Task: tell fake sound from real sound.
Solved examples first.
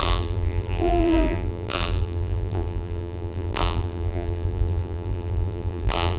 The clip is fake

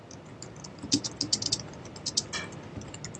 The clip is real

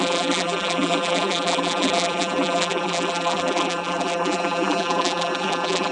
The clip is fake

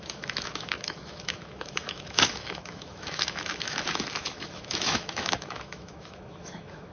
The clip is fake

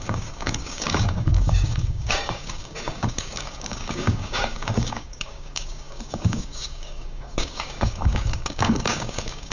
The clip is fake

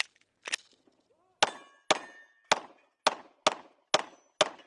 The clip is real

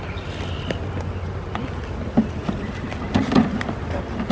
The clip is real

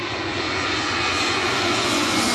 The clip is fake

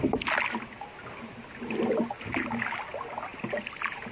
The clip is real